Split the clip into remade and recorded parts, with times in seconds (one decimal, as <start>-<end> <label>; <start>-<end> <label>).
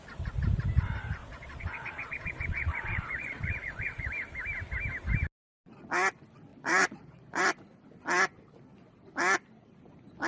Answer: 0.0-1.2 recorded; 1.2-4.1 remade; 4.1-6.5 recorded; 6.5-7.4 remade; 7.4-10.3 recorded